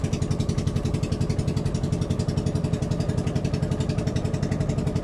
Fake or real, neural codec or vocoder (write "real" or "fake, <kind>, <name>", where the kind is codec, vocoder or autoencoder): real